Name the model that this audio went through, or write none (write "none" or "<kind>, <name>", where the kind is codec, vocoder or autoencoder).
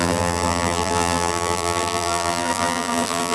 vocoder, BigVGAN v2